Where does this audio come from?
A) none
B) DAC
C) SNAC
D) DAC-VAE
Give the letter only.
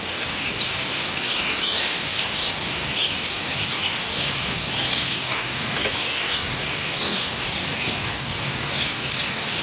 B